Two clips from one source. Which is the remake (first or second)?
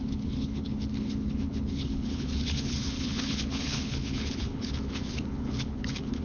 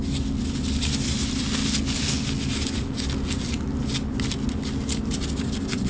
first